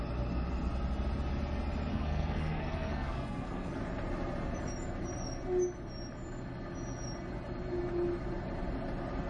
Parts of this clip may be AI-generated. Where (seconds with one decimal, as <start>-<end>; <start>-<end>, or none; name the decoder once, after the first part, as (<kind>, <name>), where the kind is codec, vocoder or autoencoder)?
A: 1.9-3.8 (codec, SNAC)